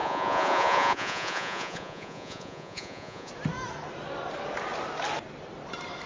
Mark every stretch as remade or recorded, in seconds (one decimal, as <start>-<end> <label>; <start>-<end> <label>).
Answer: 0.0-3.3 remade; 3.3-6.1 recorded